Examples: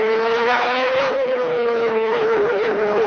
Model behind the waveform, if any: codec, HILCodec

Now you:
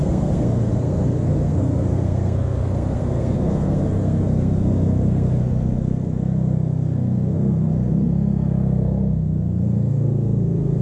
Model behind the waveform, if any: codec, SNAC